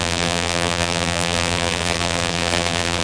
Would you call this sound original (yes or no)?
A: no